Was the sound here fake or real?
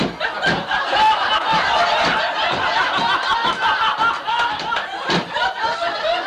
real